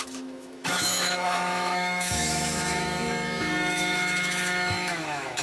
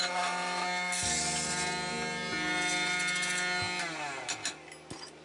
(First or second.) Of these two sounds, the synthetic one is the first